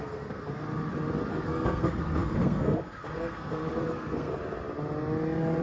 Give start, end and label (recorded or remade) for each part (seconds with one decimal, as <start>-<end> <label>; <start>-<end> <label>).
0.0-0.4 remade; 0.4-1.3 recorded; 1.3-4.3 remade; 4.3-5.6 recorded